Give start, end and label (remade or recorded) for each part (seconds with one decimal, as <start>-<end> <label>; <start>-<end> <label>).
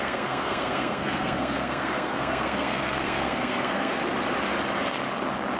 0.0-4.0 remade; 4.0-5.6 recorded